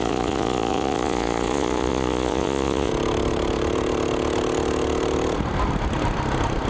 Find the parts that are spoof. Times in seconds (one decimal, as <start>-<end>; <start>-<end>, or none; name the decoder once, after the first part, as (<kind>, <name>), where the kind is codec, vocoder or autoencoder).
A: 0.0-2.9 (vocoder, Vocos)